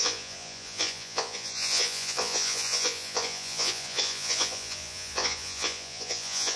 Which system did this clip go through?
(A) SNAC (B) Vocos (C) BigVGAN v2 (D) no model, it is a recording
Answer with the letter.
B